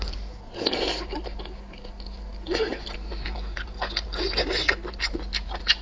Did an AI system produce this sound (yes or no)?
no